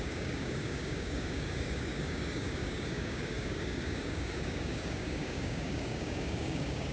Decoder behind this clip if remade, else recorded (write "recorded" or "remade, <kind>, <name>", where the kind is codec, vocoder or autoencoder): remade, codec, DAC